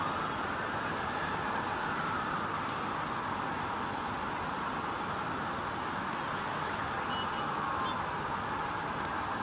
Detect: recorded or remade recorded